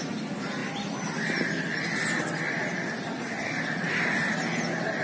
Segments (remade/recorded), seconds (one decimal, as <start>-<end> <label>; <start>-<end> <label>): 0.0-5.0 recorded

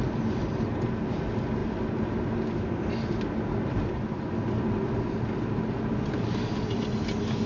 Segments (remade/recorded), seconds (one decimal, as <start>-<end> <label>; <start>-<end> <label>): 0.0-7.5 recorded

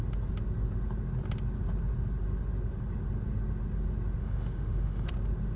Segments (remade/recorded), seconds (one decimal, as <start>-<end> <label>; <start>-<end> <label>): 0.0-4.2 recorded; 4.2-5.1 remade; 5.1-5.6 recorded

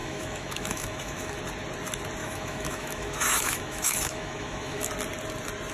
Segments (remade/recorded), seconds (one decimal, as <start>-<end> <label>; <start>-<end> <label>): 0.0-1.4 remade; 1.4-2.2 recorded; 2.2-4.9 remade; 4.9-5.7 recorded